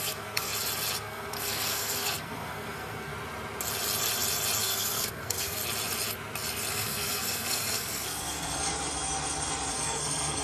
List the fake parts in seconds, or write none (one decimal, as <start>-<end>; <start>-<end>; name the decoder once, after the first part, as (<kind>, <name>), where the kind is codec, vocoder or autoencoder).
0.0-0.5 (codec, SNAC); 1.0-3.1; 4.6-5.6; 6.7-8.7; 9.7-10.4